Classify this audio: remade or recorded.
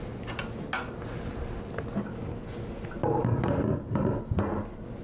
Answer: recorded